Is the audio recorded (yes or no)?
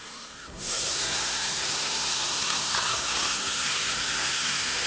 no